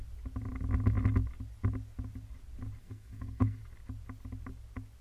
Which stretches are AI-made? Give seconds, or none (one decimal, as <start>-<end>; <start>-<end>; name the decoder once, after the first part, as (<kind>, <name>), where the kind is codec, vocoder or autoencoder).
2.8-3.6 (codec, SNAC)